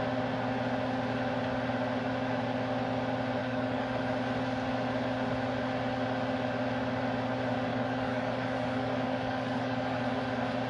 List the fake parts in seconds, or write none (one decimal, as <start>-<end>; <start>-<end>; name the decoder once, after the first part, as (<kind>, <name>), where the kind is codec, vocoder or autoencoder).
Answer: 3.4-4.0 (codec, DAC); 7.7-10.0